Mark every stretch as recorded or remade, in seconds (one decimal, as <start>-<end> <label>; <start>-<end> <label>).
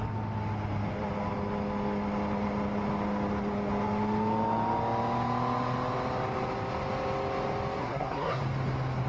0.0-7.8 recorded; 7.8-8.4 remade; 8.4-9.1 recorded